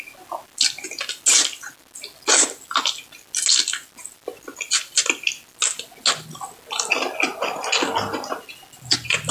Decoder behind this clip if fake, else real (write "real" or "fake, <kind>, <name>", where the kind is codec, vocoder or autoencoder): real